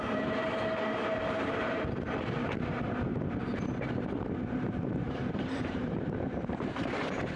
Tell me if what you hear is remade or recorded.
remade